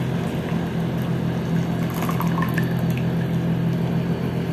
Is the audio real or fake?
real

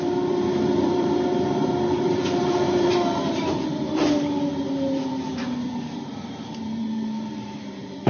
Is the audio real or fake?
fake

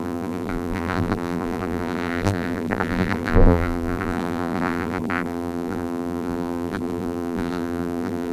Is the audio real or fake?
fake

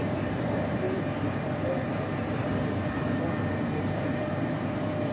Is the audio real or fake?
fake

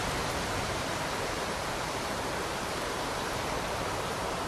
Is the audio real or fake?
fake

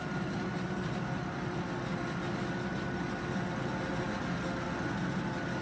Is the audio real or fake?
real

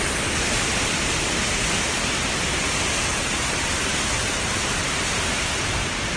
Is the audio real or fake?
real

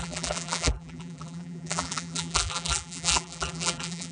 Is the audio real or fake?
fake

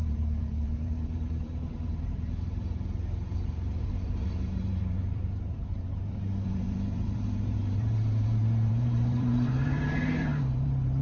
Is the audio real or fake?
fake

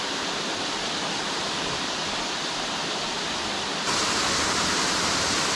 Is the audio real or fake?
real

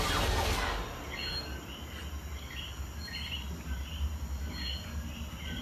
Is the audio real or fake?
real